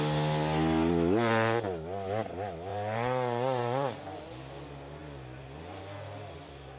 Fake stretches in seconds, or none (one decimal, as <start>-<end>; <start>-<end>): 2.7-4.2